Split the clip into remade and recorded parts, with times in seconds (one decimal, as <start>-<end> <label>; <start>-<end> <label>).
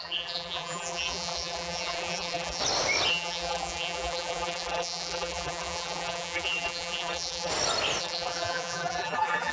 0.0-2.6 remade; 2.6-3.1 recorded; 3.1-7.5 remade; 7.5-8.0 recorded; 8.0-9.5 remade